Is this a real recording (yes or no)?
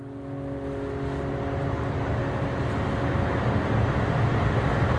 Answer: yes